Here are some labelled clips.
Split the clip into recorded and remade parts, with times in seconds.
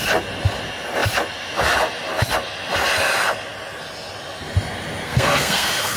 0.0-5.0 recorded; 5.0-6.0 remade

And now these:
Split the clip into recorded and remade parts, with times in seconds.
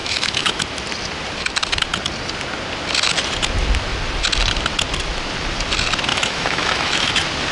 0.0-0.6 remade; 0.6-6.1 recorded; 6.1-7.1 remade; 7.1-7.5 recorded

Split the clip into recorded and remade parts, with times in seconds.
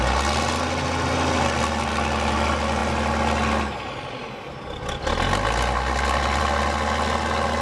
0.0-7.6 recorded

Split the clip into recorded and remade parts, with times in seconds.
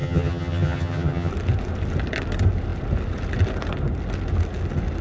0.0-1.3 remade; 1.3-5.0 recorded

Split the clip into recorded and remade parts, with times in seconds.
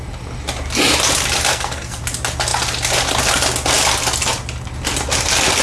0.0-1.5 recorded; 1.5-2.0 remade; 2.0-5.6 recorded